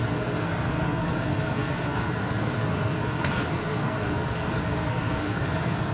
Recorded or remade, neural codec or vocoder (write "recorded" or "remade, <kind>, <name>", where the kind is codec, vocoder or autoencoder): remade, codec, SNAC